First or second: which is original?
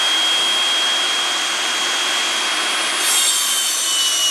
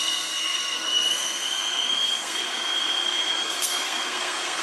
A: first